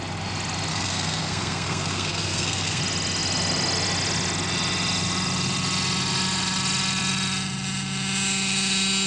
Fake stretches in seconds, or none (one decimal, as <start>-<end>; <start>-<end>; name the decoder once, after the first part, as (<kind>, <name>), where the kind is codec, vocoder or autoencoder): 0.7-2.8 (codec, SNAC)